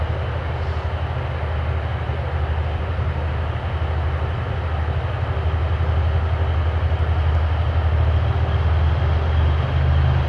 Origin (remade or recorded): recorded